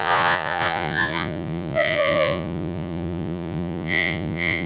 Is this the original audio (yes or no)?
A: no